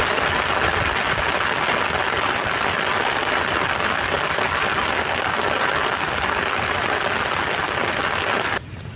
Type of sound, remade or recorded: recorded